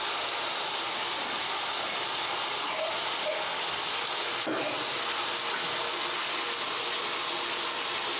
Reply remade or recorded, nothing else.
recorded